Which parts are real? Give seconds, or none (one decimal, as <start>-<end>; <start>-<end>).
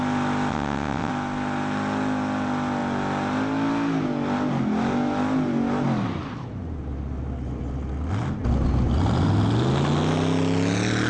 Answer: 0.0-0.5; 1.1-11.1